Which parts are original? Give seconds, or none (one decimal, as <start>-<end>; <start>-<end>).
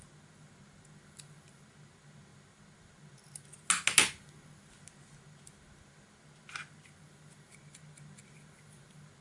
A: 0.0-9.2